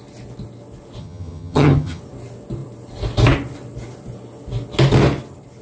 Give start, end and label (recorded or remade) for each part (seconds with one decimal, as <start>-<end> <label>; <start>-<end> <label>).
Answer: 0.0-1.0 recorded; 1.0-2.0 remade; 2.0-5.6 recorded